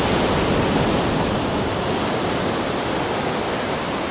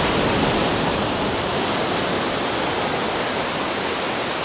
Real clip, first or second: second